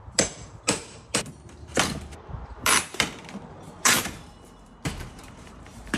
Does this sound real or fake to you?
fake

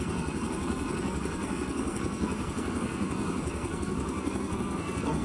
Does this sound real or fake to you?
fake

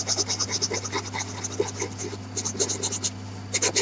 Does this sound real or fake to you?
real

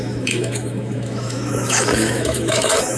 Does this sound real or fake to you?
fake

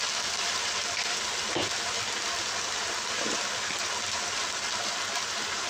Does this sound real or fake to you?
real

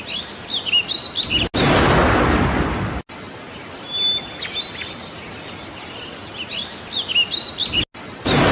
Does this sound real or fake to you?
real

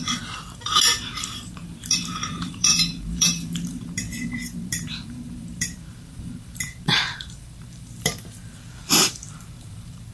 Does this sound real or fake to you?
fake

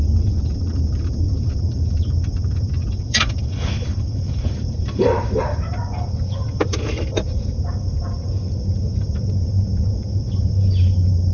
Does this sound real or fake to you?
fake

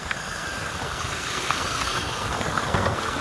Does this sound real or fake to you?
fake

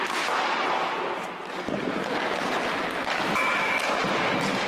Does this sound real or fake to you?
real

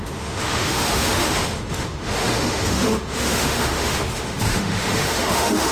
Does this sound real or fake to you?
fake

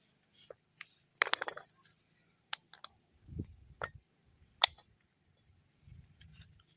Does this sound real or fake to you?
real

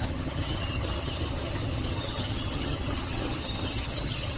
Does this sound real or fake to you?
fake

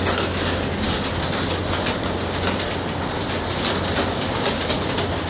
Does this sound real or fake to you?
real